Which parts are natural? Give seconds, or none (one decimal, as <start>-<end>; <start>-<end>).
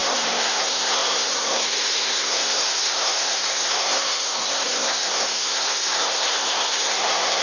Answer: none